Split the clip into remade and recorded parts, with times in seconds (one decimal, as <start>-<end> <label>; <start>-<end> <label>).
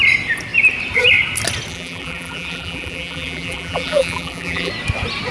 0.0-1.7 recorded; 1.7-4.7 remade; 4.7-5.3 recorded